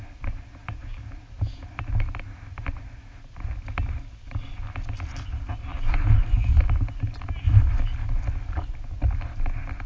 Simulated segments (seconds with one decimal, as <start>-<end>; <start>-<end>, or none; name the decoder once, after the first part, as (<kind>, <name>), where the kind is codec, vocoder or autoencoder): none